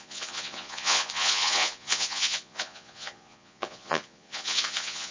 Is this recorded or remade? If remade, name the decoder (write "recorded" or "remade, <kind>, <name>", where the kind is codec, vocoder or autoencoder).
remade, vocoder, Vocos